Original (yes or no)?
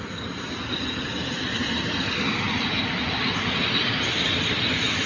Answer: yes